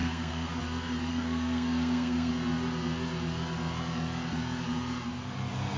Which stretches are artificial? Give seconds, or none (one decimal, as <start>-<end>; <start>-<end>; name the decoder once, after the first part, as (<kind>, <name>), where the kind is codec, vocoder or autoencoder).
0.0-0.6 (codec, SNAC); 1.1-2.3